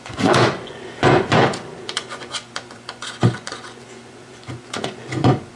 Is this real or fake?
fake